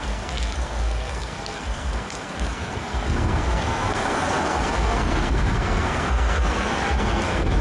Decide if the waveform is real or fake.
fake